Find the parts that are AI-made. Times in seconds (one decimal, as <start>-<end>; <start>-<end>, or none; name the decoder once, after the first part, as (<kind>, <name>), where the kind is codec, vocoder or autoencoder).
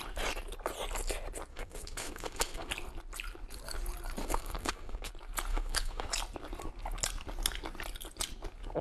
1.5-2.7 (codec, SNAC); 4.2-5.1; 5.5-6.1